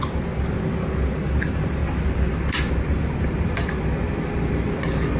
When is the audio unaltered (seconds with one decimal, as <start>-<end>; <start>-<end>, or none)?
0.0-5.2